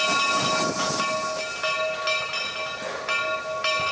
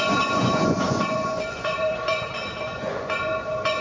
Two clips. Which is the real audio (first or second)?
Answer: first